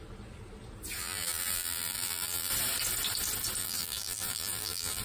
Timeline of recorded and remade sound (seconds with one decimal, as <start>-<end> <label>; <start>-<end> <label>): 0.0-1.0 recorded; 1.0-2.5 remade; 2.5-3.6 recorded; 3.6-5.0 remade